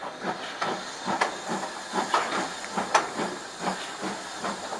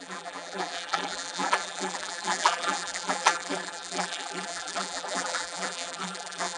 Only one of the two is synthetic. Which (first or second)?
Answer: second